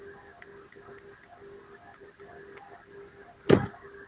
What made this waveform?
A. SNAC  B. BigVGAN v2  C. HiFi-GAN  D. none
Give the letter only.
D